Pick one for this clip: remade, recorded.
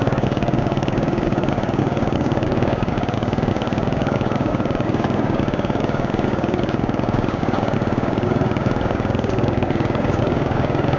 remade